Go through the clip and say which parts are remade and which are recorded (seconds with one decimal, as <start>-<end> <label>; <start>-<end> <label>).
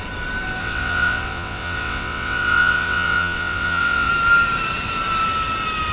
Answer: 0.0-0.6 recorded; 0.6-4.1 remade; 4.1-5.9 recorded